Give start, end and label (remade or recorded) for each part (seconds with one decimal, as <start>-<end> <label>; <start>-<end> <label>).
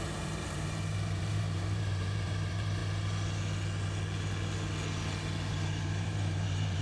0.0-2.8 remade; 2.8-5.5 recorded; 5.5-6.8 remade